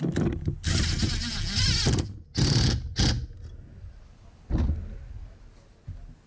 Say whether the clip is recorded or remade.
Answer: recorded